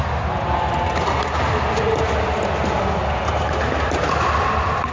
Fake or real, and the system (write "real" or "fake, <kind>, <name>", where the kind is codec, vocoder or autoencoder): real